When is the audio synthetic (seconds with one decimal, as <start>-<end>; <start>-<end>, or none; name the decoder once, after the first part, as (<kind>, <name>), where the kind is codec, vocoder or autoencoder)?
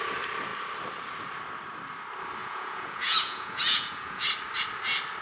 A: 2.4-4.2 (vocoder, Vocos)